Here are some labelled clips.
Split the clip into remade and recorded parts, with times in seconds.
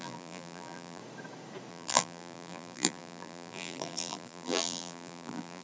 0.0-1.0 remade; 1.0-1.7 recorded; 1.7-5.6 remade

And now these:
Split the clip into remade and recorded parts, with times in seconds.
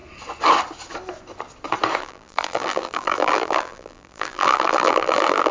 0.0-2.0 recorded; 2.0-5.5 remade